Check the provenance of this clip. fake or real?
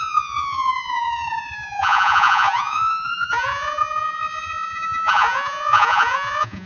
fake